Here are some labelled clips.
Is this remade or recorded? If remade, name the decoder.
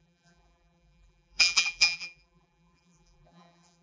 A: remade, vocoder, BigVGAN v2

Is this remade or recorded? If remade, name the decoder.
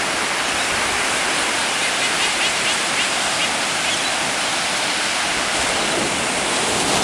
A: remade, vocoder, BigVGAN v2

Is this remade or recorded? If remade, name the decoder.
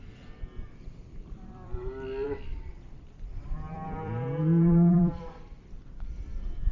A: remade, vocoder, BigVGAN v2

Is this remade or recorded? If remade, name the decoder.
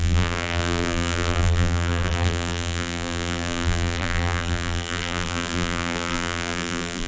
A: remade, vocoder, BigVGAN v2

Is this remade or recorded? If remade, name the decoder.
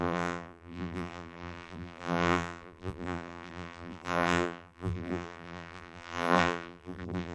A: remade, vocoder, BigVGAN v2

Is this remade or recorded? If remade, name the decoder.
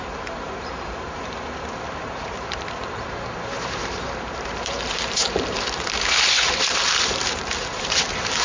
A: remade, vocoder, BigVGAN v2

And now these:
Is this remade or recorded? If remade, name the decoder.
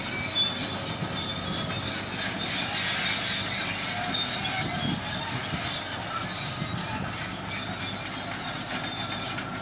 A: recorded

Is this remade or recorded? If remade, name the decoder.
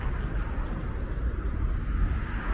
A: recorded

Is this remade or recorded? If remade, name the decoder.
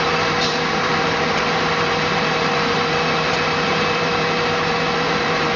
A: remade, vocoder, BigVGAN v2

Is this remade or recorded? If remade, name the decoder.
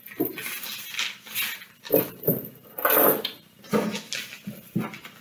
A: recorded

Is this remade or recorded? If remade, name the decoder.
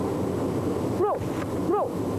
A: recorded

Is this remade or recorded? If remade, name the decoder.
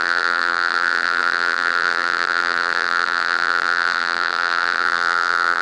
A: remade, vocoder, BigVGAN v2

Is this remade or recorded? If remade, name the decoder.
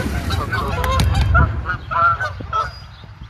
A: remade, vocoder, BigVGAN v2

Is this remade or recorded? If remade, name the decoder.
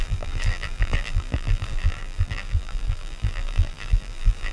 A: remade, vocoder, BigVGAN v2